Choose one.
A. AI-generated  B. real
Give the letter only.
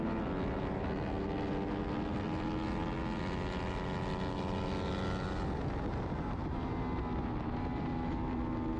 B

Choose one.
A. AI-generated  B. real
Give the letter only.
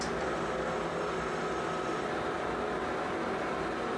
B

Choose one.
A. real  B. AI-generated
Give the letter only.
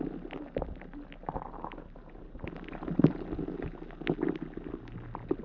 A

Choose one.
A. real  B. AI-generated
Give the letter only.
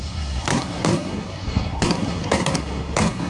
B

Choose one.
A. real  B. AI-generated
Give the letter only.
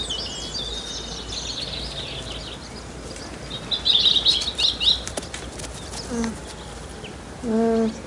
A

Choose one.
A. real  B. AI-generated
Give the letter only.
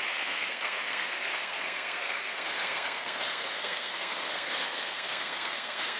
B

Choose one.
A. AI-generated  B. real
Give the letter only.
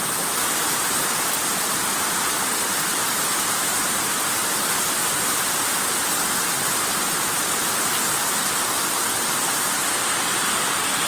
B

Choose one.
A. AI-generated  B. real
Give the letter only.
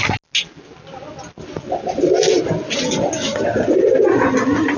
B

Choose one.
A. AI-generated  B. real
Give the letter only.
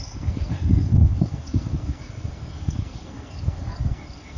A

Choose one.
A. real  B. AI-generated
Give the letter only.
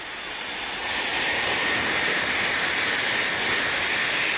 A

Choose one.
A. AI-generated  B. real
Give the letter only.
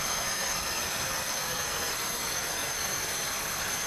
A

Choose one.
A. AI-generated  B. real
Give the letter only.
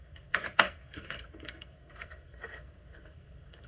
A